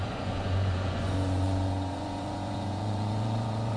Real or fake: fake